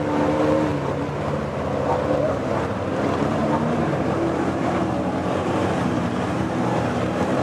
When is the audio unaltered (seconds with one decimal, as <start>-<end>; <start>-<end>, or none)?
0.0-2.9

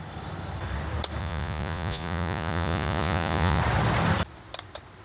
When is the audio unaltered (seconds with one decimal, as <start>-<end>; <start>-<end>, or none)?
0.0-1.2; 3.6-5.0

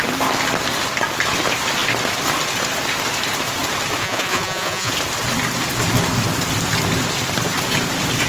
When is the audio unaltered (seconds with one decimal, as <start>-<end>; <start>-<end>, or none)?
0.0-4.0; 4.9-8.3

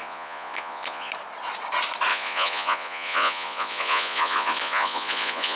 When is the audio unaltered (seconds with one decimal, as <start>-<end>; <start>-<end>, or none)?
1.1-2.1

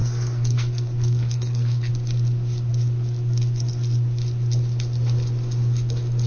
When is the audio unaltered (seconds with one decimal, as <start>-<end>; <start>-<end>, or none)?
1.9-6.3

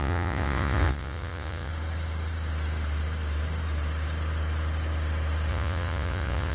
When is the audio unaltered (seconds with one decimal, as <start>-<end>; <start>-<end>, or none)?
1.7-5.5

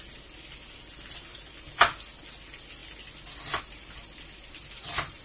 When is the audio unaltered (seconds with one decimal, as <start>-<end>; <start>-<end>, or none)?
0.0-5.2